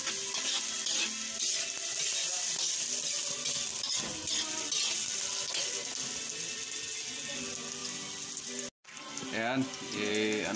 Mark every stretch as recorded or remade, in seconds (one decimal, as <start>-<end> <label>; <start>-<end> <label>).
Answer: 0.0-10.6 recorded